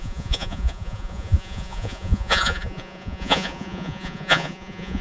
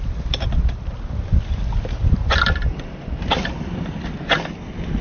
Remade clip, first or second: first